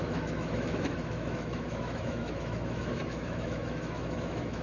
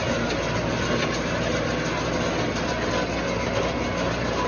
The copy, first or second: first